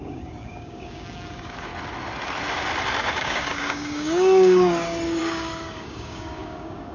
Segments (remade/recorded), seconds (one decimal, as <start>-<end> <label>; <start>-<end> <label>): 0.0-1.7 remade; 1.7-3.0 recorded; 3.0-6.9 remade